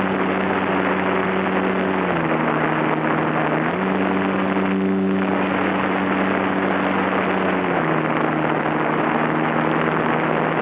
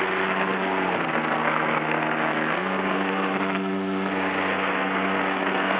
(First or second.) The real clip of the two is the first